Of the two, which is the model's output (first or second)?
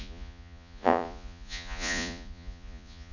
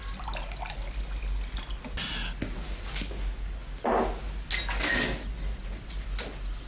first